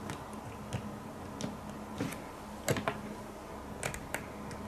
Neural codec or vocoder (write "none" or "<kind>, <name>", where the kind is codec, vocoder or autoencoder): none